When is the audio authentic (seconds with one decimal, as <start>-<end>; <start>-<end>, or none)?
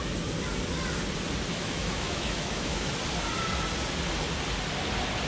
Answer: 0.0-1.5; 2.9-5.3